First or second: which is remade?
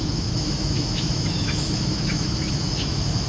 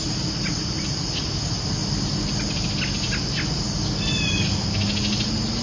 first